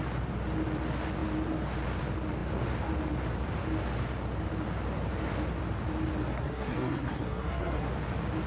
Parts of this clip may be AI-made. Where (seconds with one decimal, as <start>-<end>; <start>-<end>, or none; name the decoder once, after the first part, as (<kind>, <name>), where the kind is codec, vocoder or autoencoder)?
6.3-7.9 (codec, SNAC)